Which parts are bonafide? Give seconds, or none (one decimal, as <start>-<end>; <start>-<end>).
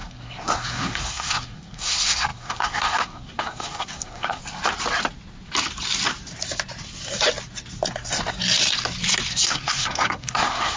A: 4.4-9.3